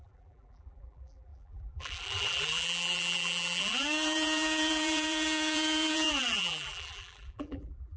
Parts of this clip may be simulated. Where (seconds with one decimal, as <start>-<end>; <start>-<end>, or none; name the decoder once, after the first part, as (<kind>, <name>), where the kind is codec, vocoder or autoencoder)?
0.0-8.0 (vocoder, BigVGAN v2)